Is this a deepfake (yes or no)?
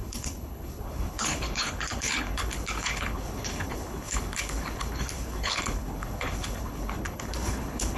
yes